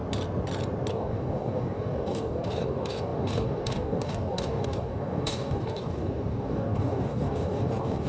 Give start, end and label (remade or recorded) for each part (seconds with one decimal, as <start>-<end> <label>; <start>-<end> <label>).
0.0-0.9 recorded; 0.9-8.1 remade